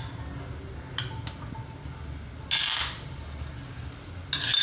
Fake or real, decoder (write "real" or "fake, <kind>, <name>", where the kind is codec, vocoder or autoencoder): real